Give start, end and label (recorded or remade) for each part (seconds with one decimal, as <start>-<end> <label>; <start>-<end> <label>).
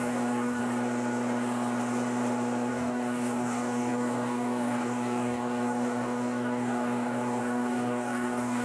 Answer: 0.0-0.6 remade; 0.6-2.7 recorded; 2.7-8.6 remade